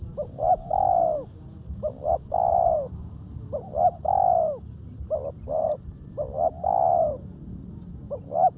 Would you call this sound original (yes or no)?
yes